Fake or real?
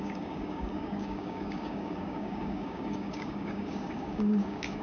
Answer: fake